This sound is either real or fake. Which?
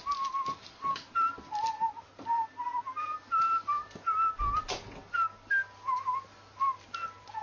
real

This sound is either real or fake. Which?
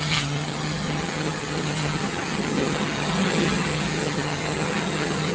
fake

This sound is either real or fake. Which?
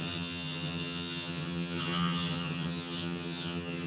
fake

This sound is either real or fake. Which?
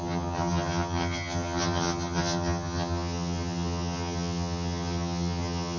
fake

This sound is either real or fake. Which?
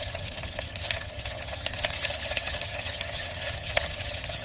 fake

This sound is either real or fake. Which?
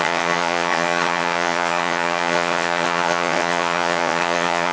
fake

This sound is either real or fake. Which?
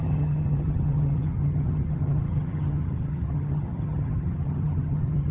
fake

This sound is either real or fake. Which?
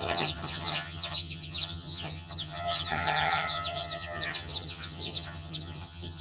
fake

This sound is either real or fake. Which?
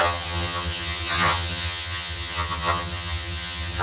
fake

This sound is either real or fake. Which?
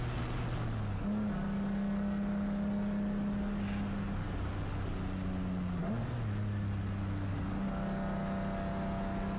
real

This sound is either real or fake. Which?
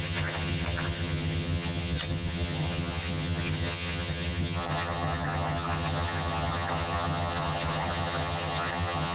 fake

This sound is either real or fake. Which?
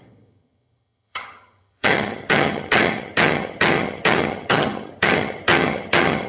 fake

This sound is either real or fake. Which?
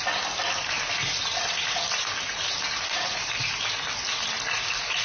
real